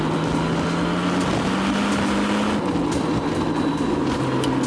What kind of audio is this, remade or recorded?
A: recorded